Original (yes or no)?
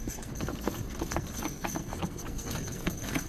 no